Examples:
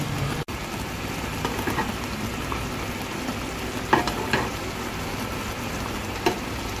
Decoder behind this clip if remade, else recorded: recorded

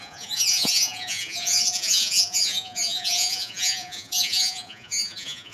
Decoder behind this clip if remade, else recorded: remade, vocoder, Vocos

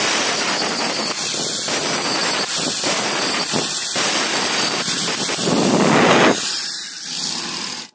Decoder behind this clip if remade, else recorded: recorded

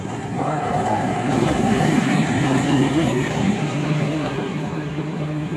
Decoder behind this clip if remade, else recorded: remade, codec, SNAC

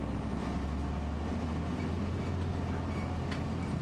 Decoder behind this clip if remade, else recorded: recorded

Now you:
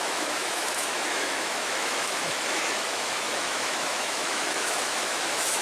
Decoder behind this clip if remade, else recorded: remade, autoencoder, DAC-VAE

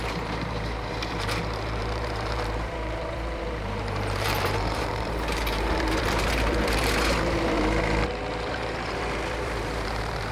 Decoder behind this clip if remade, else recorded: remade, vocoder, BigVGAN v2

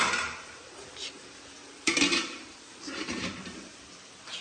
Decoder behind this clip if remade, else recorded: remade, vocoder, BigVGAN v2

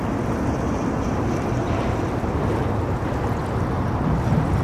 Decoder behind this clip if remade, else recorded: remade, vocoder, BigVGAN v2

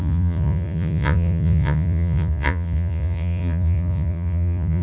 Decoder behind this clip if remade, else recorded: remade, vocoder, Vocos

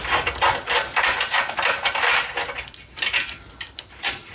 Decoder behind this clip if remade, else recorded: recorded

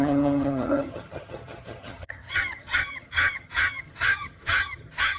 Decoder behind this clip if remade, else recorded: remade, vocoder, HiFi-GAN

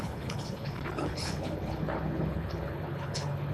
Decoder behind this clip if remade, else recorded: remade, codec, HILCodec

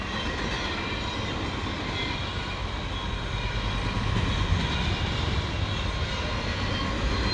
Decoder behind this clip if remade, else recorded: recorded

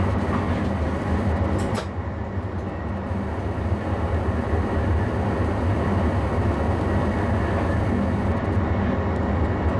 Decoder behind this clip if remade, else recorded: recorded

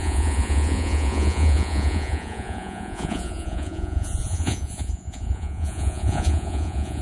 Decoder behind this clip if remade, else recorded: remade, vocoder, Vocos